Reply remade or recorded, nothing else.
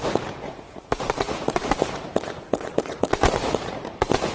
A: remade